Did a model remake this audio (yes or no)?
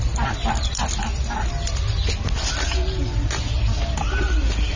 no